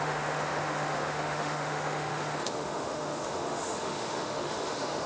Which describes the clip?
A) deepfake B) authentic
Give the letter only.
A